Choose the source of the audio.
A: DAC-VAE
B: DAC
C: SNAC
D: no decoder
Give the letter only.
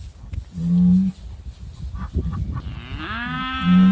D